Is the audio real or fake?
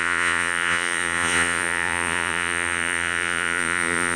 fake